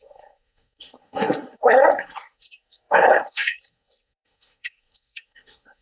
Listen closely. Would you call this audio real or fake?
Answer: fake